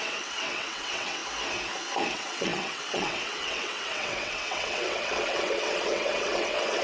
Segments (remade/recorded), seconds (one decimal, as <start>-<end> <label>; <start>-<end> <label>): 0.0-1.2 remade; 1.2-2.1 recorded; 2.1-6.8 remade